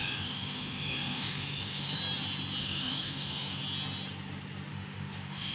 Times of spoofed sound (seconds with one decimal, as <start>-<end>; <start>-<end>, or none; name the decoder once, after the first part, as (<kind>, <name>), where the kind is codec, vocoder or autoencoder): 0.0-2.0 (autoencoder, DAC-VAE); 2.6-3.6; 4.7-5.5